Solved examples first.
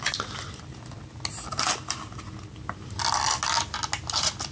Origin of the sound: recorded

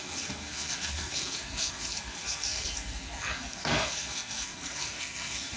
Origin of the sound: remade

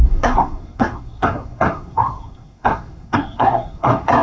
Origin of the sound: remade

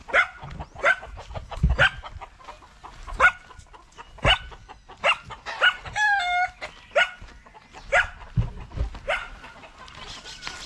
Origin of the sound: recorded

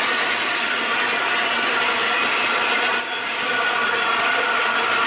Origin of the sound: recorded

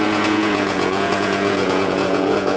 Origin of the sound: remade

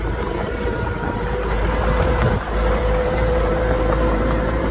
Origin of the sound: remade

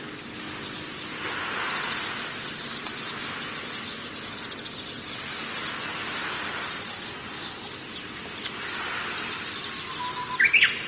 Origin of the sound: recorded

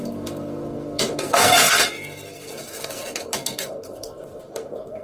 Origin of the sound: remade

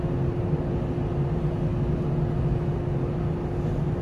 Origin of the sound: recorded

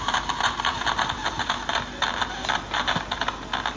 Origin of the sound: recorded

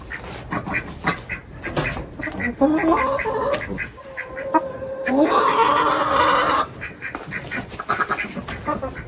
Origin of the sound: recorded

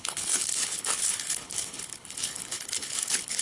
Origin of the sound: remade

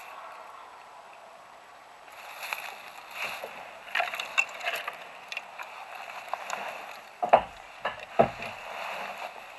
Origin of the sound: recorded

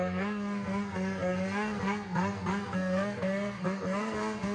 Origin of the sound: remade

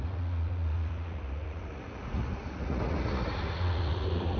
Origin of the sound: remade